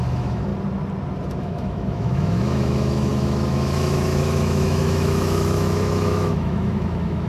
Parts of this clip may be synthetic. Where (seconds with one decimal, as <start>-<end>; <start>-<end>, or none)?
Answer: 0.0-0.5; 1.3-7.3